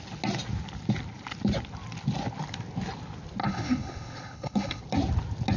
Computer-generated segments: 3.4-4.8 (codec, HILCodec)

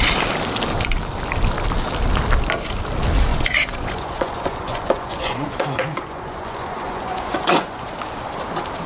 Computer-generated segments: 3.3-7.9 (vocoder, Vocos)

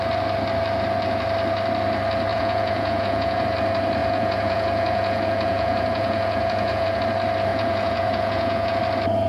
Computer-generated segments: 2.3-3.4 (vocoder, Vocos); 4.0-7.0; 7.5-8.8

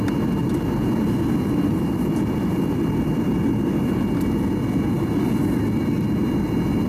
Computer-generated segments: 0.4-4.5 (vocoder, BigVGAN v2)